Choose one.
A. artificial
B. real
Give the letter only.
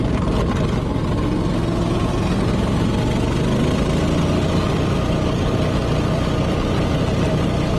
B